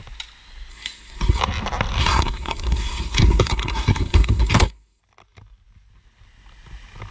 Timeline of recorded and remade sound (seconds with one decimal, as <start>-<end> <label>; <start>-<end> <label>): 0.0-0.7 recorded; 0.7-1.4 remade; 1.4-2.0 recorded; 2.0-5.0 remade; 5.0-7.1 recorded